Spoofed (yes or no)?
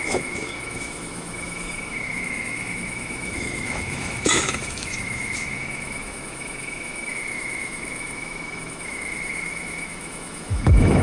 yes